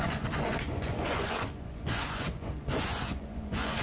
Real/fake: fake